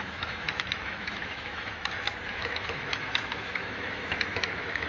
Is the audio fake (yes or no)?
yes